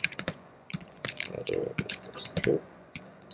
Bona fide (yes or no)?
no